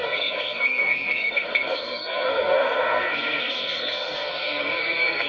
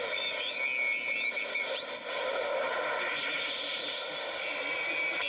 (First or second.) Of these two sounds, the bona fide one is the second